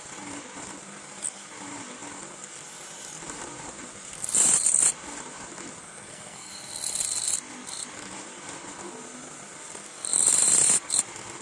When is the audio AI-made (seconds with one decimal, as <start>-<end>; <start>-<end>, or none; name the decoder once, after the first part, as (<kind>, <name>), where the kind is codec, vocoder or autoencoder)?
5.8-6.5 (codec, SNAC)